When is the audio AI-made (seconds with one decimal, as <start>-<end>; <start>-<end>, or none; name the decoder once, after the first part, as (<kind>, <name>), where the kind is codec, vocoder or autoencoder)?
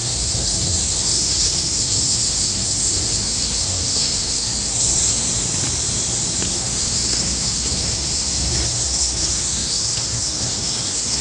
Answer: 0.0-5.3 (codec, SNAC); 6.5-11.2